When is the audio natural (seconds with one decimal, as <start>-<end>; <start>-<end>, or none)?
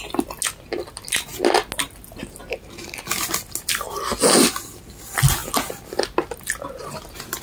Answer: 0.0-7.4